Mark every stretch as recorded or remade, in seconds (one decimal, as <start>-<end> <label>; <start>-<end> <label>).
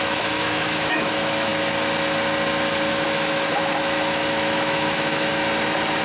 0.0-1.5 remade; 1.5-2.9 recorded; 2.9-5.3 remade; 5.3-6.0 recorded